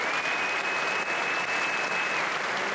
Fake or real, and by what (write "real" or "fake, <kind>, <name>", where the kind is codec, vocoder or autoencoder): real